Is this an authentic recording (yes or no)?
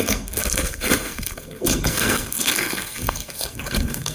no